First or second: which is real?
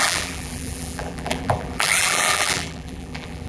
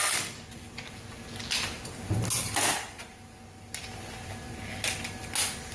second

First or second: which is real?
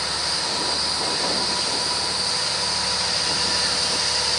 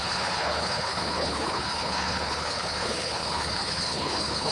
first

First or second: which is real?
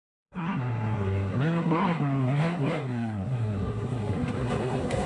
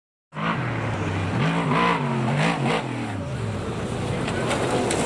second